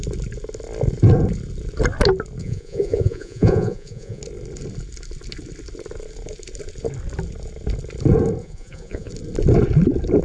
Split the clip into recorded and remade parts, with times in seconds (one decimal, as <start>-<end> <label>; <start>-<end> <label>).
0.0-2.4 recorded; 2.4-4.2 remade; 4.2-8.4 recorded; 8.4-9.1 remade; 9.1-10.2 recorded